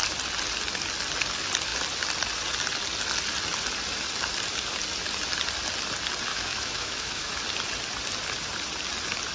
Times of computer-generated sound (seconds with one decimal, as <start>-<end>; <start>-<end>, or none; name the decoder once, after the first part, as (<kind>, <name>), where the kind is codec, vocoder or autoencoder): 6.3-7.3 (autoencoder, DAC-VAE)